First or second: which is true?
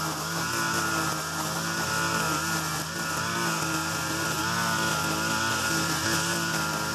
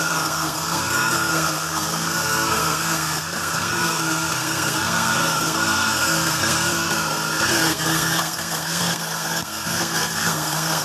first